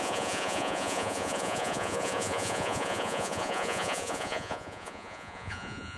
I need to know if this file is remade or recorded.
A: remade